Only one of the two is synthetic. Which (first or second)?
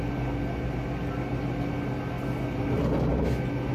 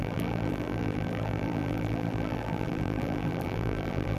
second